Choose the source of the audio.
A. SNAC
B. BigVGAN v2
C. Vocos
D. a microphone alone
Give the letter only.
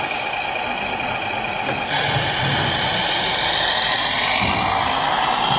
D